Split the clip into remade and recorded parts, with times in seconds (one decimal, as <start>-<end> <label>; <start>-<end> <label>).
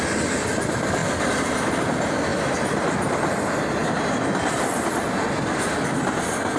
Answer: 0.0-1.0 recorded; 1.0-1.9 remade; 1.9-2.3 recorded; 2.3-2.9 remade; 2.9-3.8 recorded; 3.8-5.2 remade; 5.2-6.6 recorded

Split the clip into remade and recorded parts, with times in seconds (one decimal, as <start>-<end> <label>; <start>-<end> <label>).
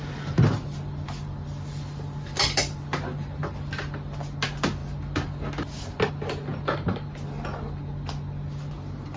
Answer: 0.0-9.2 recorded